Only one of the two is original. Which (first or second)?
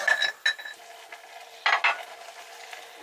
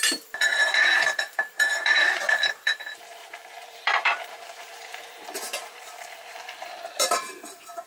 first